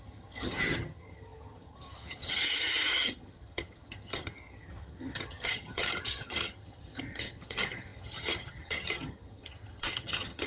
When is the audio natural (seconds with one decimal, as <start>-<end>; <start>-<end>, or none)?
none